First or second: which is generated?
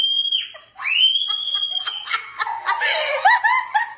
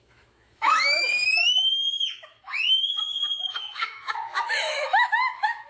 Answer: second